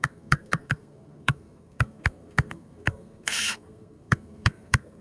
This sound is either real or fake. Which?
fake